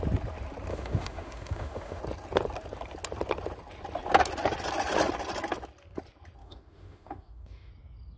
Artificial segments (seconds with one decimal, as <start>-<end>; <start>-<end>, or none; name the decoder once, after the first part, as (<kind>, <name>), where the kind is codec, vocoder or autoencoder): 0.7-2.0 (autoencoder, DAC-VAE); 6.4-7.7